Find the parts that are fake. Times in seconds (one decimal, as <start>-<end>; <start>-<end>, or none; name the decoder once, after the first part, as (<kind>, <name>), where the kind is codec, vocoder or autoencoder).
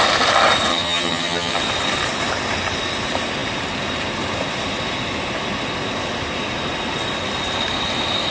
0.7-1.6 (vocoder, HiFi-GAN)